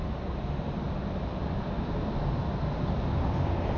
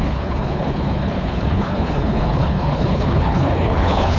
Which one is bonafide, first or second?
first